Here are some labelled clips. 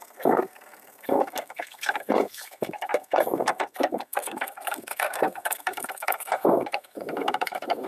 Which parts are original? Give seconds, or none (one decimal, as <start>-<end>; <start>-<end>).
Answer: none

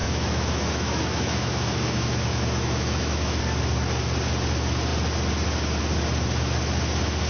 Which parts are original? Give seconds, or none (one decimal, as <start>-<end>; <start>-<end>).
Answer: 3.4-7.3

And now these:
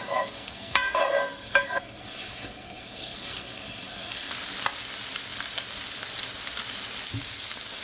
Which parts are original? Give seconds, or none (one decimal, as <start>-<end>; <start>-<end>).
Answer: 4.3-7.8